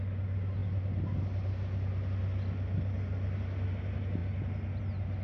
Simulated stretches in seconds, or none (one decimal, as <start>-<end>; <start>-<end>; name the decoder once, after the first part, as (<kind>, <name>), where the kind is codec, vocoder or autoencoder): none